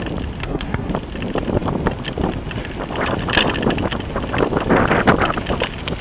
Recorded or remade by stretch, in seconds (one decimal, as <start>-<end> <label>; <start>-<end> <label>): 0.0-0.4 recorded; 0.4-0.9 remade; 0.9-6.0 recorded